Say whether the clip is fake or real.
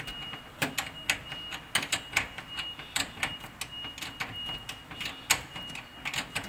real